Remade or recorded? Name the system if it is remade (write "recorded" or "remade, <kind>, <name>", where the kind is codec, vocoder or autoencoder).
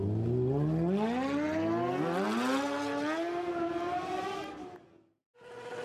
recorded